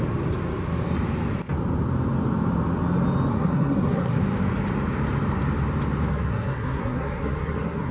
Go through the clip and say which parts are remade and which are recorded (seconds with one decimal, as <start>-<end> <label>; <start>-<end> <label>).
0.0-3.3 recorded; 3.3-4.2 remade; 4.2-6.1 recorded; 6.1-7.9 remade

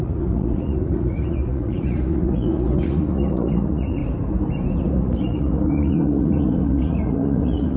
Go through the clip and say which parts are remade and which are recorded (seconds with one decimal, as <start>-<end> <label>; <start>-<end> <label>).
0.0-4.0 remade; 4.0-4.8 recorded; 4.8-7.8 remade

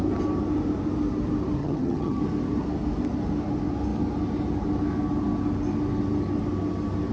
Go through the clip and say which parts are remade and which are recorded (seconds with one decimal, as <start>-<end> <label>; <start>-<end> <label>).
0.0-1.6 recorded; 1.6-2.2 remade; 2.2-7.1 recorded

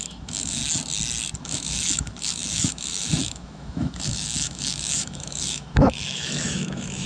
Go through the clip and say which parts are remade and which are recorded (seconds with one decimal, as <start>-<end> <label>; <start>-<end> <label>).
0.0-0.6 remade; 0.6-1.4 recorded; 1.4-7.1 remade

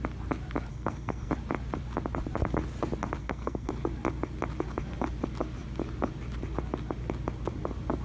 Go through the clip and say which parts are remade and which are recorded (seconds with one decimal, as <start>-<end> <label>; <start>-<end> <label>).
0.0-0.7 recorded; 0.7-1.3 remade; 1.3-3.2 recorded; 3.2-3.7 remade; 3.7-8.0 recorded

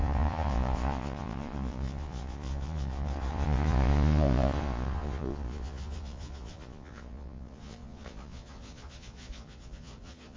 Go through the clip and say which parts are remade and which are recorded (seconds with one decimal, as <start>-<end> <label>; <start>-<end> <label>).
0.0-10.4 remade

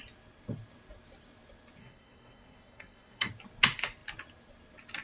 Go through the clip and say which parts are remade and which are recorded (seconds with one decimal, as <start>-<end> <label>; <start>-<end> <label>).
0.0-1.8 recorded; 1.8-3.3 remade; 3.3-5.0 recorded